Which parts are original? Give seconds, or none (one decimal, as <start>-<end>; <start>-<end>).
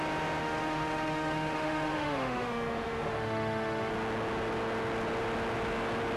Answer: 0.0-0.4; 3.9-6.2